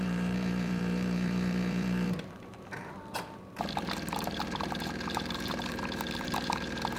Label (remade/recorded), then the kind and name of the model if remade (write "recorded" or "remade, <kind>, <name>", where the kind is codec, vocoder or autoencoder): remade, vocoder, BigVGAN v2